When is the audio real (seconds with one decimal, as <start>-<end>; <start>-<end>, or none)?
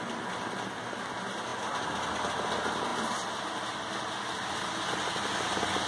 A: 0.0-1.5; 2.3-2.9; 4.5-5.9